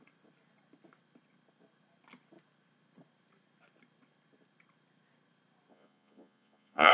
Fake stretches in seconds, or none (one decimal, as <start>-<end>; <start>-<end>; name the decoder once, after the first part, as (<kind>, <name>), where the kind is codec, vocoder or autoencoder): 5.7-6.9 (vocoder, Vocos)